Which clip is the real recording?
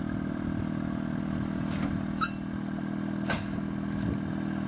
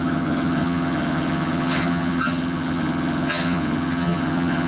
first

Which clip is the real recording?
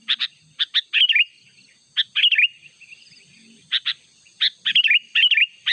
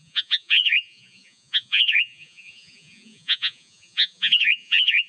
first